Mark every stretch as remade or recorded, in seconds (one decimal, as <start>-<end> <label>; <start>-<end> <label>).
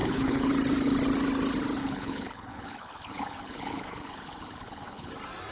0.0-0.5 remade; 0.5-1.8 recorded; 1.8-5.1 remade; 5.1-5.5 recorded